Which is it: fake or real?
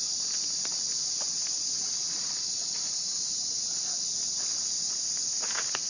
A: real